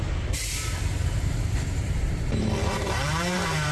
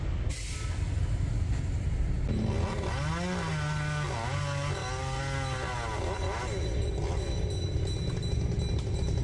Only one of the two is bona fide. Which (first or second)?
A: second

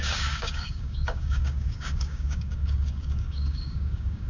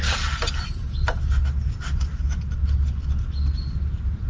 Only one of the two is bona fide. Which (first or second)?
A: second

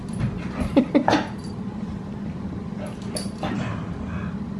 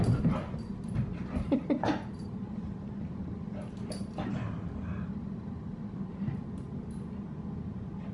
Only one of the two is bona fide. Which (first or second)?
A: first